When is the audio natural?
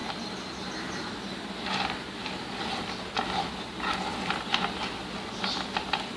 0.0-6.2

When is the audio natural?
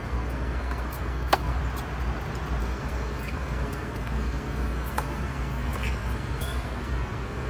1.6-2.6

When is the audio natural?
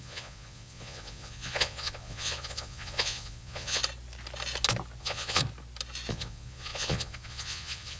3.8-5.0; 5.4-6.1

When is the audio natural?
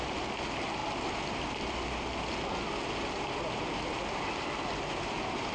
0.0-5.5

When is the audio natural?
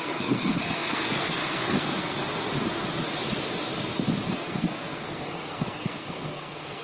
2.2-4.3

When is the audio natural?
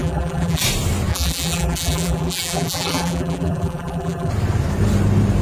0.6-1.1; 4.3-5.4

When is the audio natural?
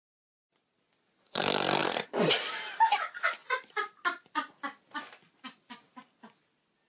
0.0-1.8; 2.9-3.4; 5.1-6.9